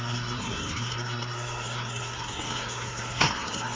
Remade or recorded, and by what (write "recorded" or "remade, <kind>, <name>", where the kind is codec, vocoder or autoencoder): remade, codec, SNAC